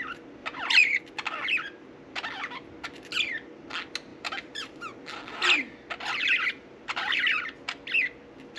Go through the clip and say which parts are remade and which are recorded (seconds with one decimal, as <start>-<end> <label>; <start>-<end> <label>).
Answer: 0.0-0.4 recorded; 0.4-1.0 remade; 1.0-4.1 recorded; 4.1-4.8 remade; 4.8-6.5 recorded; 6.5-7.2 remade; 7.2-8.6 recorded